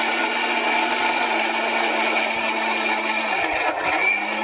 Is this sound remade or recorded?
recorded